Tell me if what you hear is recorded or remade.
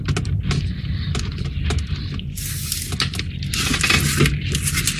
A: recorded